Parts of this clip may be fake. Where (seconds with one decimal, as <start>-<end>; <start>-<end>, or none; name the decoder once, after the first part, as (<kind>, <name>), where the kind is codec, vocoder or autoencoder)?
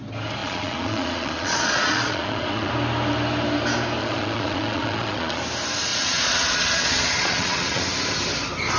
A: 0.4-2.7 (vocoder, Vocos); 4.0-5.4; 5.9-7.8